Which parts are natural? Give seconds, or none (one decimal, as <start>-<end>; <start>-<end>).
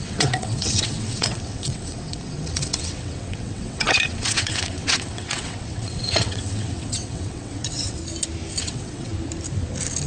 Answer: 8.0-8.6; 9.1-10.1